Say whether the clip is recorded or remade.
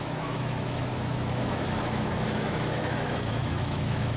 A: remade